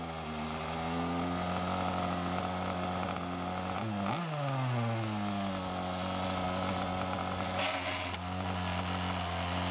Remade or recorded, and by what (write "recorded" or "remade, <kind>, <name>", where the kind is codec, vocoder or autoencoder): recorded